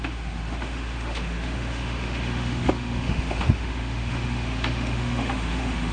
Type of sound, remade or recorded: remade